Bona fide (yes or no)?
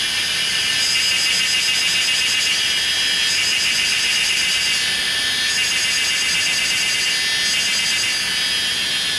yes